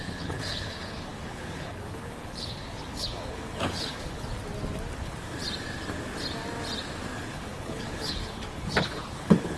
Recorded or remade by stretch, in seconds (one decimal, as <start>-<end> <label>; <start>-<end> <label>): 0.0-4.3 remade; 4.3-5.0 recorded; 5.0-5.4 remade; 5.4-7.3 recorded; 7.3-9.6 remade